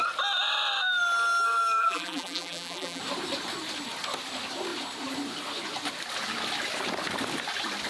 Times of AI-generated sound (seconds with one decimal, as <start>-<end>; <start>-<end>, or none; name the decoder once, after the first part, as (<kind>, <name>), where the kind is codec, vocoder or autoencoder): 1.8-3.0 (vocoder, BigVGAN v2)